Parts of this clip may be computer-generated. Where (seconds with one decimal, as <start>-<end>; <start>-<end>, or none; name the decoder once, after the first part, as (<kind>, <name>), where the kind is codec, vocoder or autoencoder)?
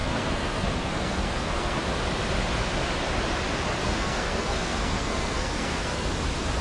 0.0-1.8 (codec, SNAC); 3.8-6.1